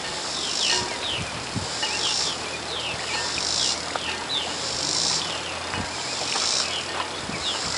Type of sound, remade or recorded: recorded